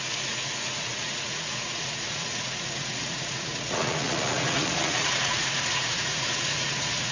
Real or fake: fake